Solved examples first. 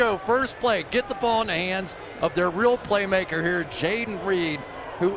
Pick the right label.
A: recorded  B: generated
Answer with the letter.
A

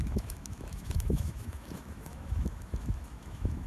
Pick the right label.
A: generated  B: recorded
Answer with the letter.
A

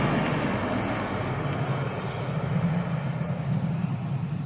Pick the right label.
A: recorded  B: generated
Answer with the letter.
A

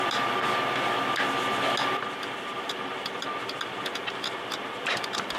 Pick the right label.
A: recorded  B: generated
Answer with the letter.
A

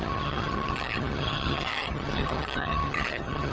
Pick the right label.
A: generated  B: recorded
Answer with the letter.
A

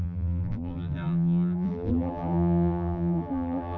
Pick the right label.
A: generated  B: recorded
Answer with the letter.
A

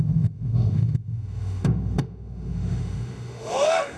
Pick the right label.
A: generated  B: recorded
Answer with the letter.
A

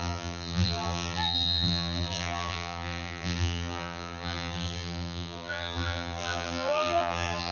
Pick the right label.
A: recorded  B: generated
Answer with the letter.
B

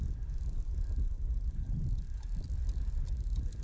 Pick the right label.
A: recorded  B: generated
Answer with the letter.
A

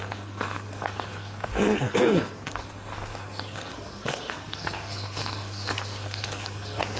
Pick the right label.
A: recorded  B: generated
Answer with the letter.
B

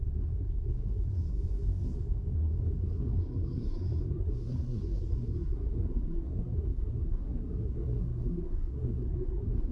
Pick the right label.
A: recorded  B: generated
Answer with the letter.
B